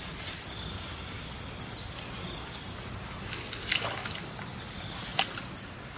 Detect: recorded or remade recorded